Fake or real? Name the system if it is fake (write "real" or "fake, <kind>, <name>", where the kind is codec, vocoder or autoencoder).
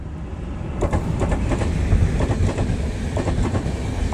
fake, vocoder, BigVGAN v2